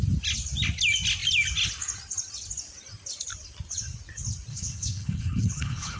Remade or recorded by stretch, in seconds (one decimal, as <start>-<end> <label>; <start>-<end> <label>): 0.0-4.5 recorded; 4.5-6.0 remade